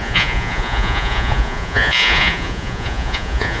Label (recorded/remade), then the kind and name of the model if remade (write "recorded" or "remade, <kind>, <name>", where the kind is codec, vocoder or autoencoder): remade, vocoder, Vocos